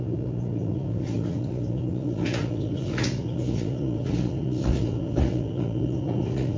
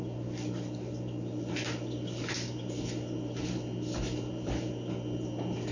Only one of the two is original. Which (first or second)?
second